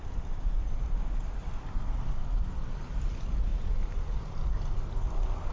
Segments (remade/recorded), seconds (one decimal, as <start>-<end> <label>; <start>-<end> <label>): 0.0-1.4 remade; 1.4-2.1 recorded; 2.1-3.5 remade; 3.5-4.9 recorded; 4.9-5.5 remade

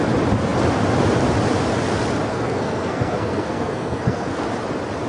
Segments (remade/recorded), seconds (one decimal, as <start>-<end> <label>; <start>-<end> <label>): 0.0-2.3 recorded; 2.3-4.4 remade; 4.4-5.1 recorded

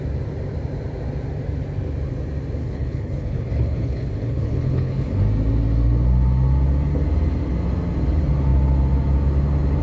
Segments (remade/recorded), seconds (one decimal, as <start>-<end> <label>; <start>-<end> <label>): 0.0-2.6 recorded; 2.6-5.2 remade; 5.2-9.8 recorded

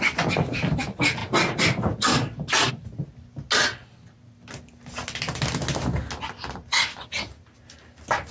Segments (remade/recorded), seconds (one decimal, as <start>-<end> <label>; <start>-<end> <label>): 0.0-8.3 recorded

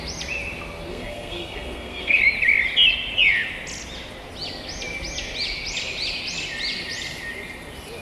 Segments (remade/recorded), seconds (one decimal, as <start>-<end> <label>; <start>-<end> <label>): 0.0-0.9 recorded; 0.9-2.2 remade; 2.2-8.0 recorded